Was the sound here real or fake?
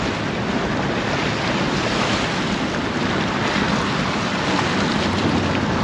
real